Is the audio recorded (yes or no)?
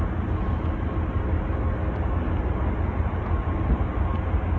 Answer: yes